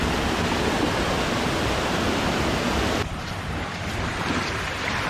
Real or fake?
real